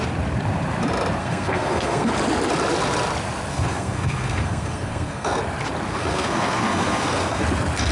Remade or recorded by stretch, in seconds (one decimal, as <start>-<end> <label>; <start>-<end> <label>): 0.0-1.2 recorded; 1.2-2.1 remade; 2.1-3.5 recorded; 3.5-5.4 remade; 5.4-5.9 recorded; 5.9-7.4 remade; 7.4-7.9 recorded